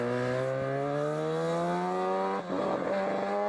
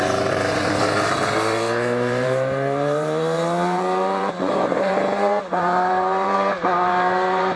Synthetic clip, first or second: second